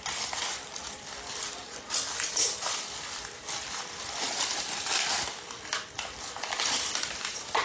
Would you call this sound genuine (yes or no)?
no